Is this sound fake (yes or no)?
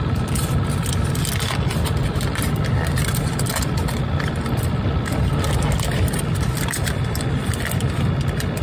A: no